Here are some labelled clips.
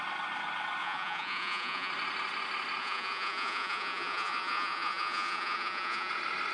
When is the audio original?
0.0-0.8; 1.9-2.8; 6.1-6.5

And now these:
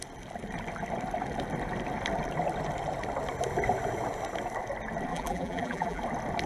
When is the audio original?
0.0-5.1; 6.0-6.5

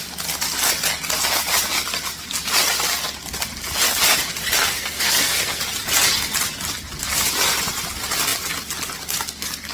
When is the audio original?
0.0-4.6; 5.6-9.7

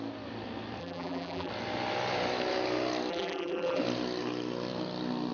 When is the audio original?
0.0-0.8; 1.5-3.1; 3.8-5.3

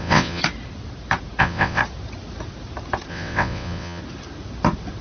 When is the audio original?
0.4-1.4; 1.8-3.1; 4.0-5.0

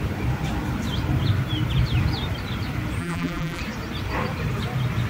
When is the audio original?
0.0-3.0; 3.6-5.1

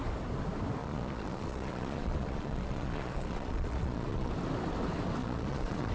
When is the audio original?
0.0-0.8; 4.3-5.2

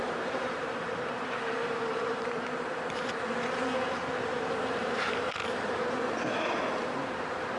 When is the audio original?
5.4-6.6